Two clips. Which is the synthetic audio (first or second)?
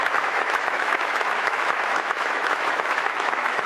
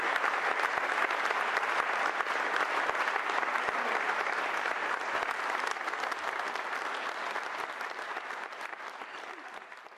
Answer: first